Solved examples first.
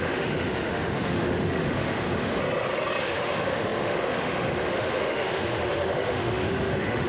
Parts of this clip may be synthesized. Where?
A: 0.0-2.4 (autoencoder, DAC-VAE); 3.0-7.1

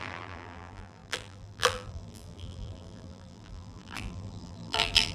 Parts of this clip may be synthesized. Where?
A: 0.0-5.1 (vocoder, BigVGAN v2)

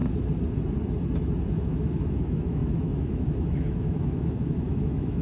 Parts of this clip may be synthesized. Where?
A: 1.4-5.2 (autoencoder, DAC-VAE)